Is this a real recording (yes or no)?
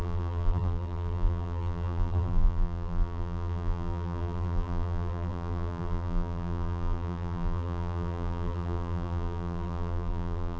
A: no